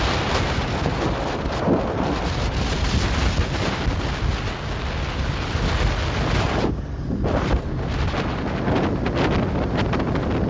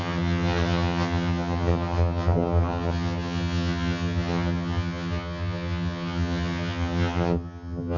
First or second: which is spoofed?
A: second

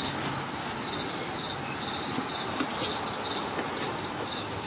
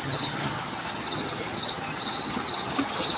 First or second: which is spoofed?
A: second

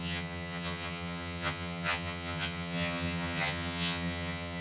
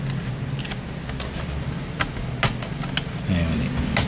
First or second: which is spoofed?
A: first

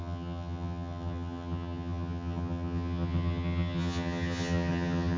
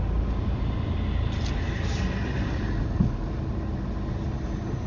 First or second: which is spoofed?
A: first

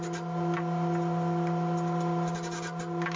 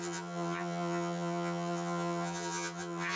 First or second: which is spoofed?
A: second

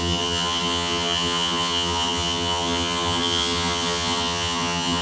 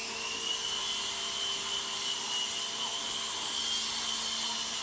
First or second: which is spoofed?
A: first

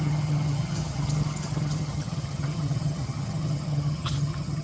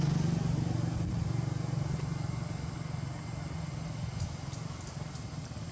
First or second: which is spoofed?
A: first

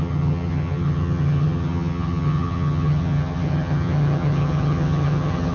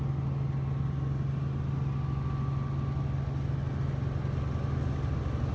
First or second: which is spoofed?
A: first